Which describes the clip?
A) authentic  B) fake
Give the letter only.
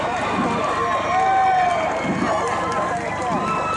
A